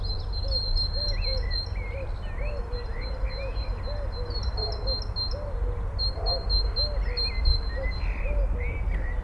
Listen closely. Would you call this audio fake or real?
real